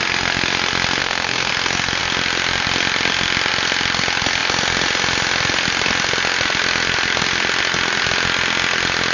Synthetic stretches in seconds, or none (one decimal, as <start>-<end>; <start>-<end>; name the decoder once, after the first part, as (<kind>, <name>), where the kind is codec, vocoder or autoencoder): 1.0-1.5 (codec, SNAC)